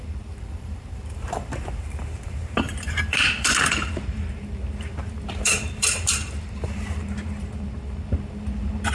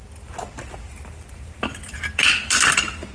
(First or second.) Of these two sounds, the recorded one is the second